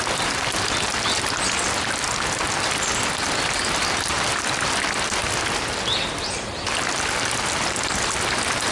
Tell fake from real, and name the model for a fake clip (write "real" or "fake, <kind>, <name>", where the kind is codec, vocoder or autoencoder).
real